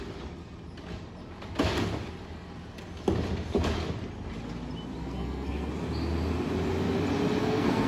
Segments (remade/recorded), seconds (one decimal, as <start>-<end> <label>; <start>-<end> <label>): 0.0-5.0 recorded; 5.0-5.7 remade; 5.7-7.4 recorded; 7.4-7.9 remade